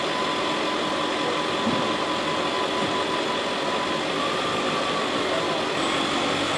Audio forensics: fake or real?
real